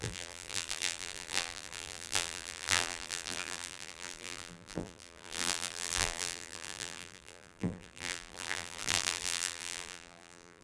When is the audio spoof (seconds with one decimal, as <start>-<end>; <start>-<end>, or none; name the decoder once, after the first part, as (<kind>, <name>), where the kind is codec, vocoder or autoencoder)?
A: 0.0-10.6 (vocoder, BigVGAN v2)